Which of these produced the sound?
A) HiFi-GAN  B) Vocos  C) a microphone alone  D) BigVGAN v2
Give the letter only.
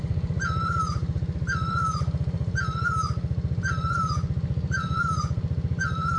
D